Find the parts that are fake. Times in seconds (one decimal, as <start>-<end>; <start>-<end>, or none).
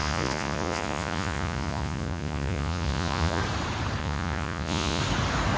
0.0-3.4; 4.0-5.0